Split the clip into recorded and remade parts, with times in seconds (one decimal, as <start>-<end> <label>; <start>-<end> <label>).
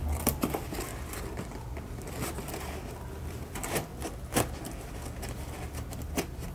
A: 0.0-0.9 remade; 0.9-3.0 recorded; 3.0-3.9 remade; 3.9-5.4 recorded; 5.4-6.5 remade